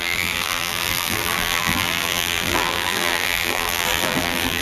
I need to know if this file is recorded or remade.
remade